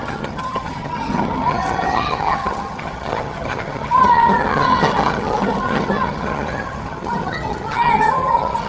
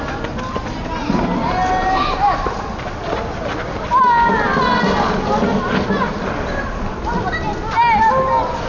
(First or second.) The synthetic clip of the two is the first